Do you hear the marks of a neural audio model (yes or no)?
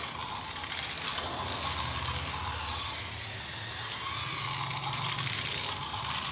no